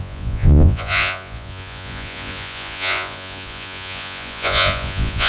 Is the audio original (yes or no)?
no